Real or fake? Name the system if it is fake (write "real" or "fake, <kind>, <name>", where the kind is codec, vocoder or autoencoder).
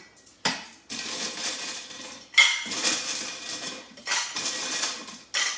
real